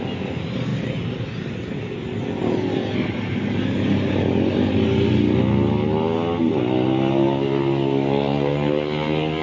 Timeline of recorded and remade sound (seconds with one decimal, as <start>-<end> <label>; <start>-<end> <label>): 0.0-9.4 recorded